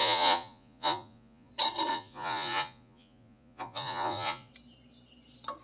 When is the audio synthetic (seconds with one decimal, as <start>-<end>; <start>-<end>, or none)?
0.0-1.5; 1.9-4.5